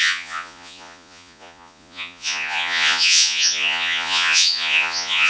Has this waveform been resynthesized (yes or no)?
yes